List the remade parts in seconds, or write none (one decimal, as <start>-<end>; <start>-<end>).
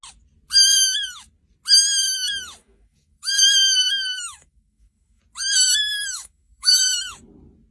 2.6-5.2; 5.9-6.9